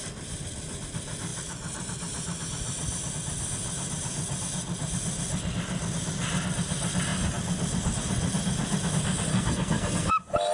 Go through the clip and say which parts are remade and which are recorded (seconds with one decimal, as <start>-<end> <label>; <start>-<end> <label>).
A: 0.0-9.3 recorded; 9.3-10.1 remade; 10.1-10.5 recorded